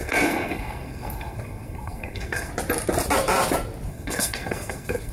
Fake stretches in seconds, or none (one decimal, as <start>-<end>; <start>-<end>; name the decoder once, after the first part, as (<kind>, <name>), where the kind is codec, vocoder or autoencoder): 0.0-2.5 (codec, SNAC); 3.9-5.1